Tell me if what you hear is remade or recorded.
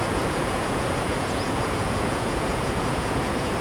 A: remade